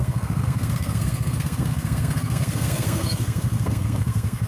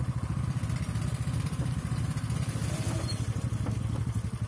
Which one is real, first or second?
second